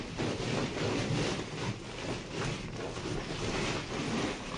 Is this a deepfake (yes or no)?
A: yes